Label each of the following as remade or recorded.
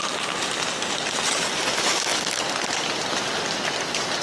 recorded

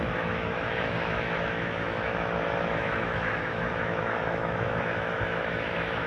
remade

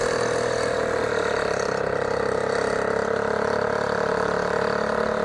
recorded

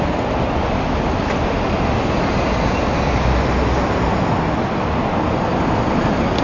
recorded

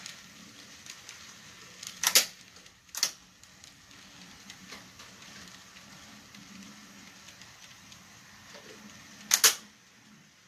recorded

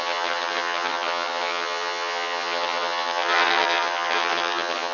remade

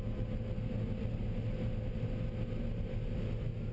recorded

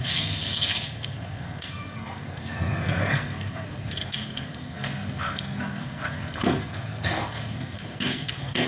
remade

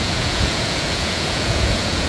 remade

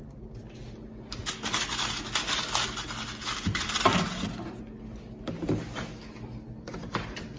recorded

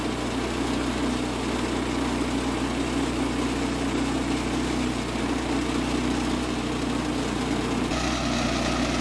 recorded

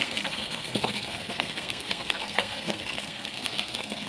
remade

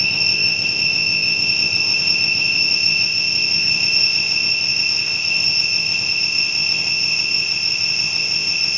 remade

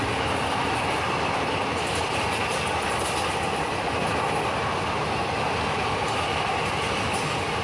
recorded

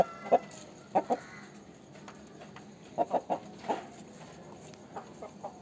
recorded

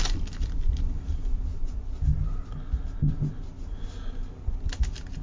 recorded